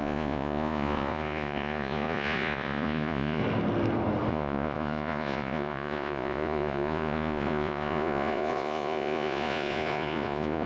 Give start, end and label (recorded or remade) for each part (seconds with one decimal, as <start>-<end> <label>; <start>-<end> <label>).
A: 0.0-3.4 remade; 3.4-4.3 recorded; 4.3-10.7 remade